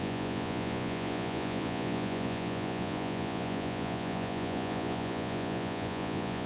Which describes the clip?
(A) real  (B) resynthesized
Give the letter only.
B